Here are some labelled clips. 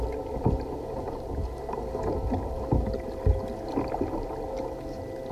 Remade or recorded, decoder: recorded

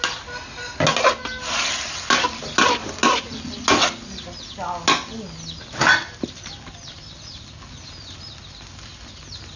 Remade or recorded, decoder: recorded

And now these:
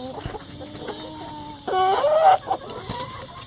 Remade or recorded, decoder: recorded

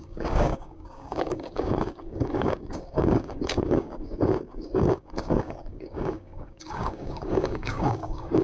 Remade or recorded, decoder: remade, codec, DAC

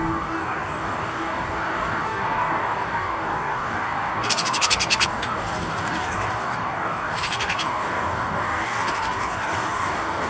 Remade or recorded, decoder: remade, codec, DAC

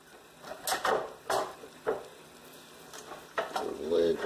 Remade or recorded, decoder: recorded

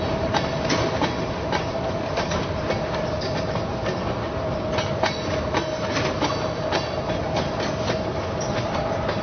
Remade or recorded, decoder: recorded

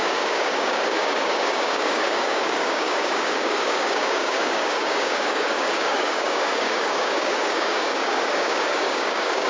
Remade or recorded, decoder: remade, codec, DAC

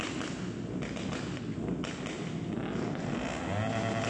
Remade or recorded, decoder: recorded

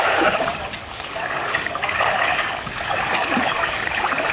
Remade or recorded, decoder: remade, codec, DAC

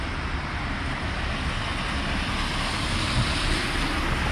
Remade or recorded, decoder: recorded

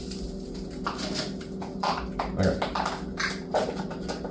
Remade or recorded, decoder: recorded